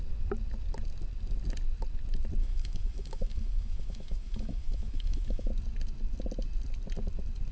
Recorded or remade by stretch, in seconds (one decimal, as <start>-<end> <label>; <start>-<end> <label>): 0.0-2.4 recorded; 2.4-5.5 remade; 5.5-7.5 recorded